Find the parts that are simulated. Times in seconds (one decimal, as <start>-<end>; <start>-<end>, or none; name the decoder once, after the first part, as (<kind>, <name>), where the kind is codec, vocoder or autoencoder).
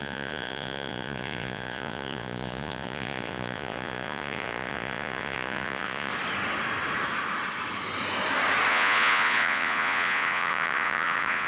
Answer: 0.0-6.1 (vocoder, Vocos); 8.7-11.5